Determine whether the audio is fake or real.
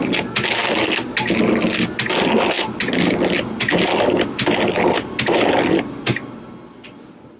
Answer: real